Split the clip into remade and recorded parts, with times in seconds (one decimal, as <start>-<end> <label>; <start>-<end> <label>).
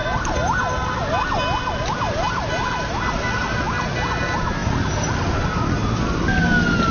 0.0-6.9 recorded